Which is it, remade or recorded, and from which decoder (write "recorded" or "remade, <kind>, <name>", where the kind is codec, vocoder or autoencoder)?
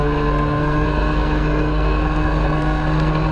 remade, codec, SNAC